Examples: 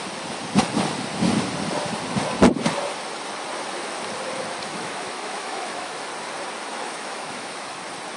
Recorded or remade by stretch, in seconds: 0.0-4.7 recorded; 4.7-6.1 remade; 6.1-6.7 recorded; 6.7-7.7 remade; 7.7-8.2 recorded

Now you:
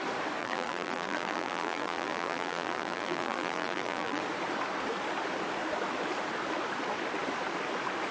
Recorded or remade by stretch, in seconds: 0.0-0.4 recorded; 0.4-4.2 remade; 4.2-8.1 recorded